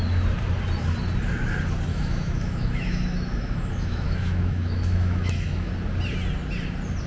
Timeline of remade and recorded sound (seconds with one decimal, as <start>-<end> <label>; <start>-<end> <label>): 0.0-1.9 recorded; 1.9-5.7 remade; 5.7-7.1 recorded